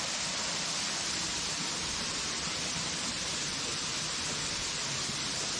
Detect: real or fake real